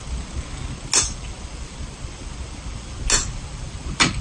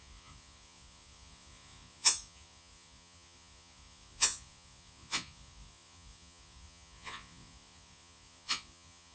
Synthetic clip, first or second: second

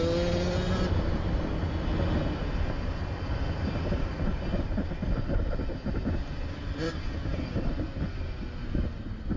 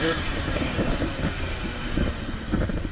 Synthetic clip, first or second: second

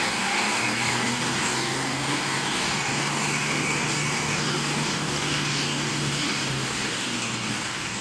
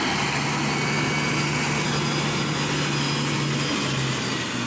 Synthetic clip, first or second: first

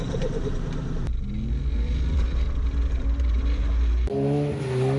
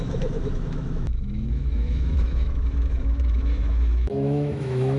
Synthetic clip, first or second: second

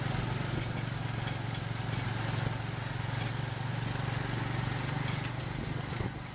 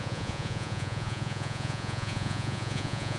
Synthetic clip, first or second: second